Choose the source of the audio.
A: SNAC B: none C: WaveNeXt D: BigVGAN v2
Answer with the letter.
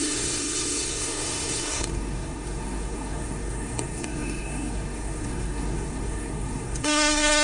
A